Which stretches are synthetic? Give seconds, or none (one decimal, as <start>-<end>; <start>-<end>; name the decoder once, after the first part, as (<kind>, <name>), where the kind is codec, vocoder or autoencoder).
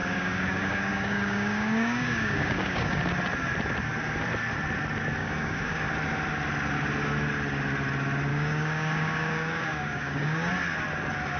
0.0-3.0 (codec, DAC); 5.2-5.8; 8.3-10.5